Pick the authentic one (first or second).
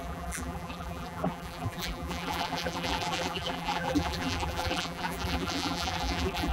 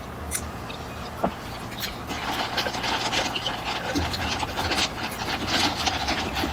second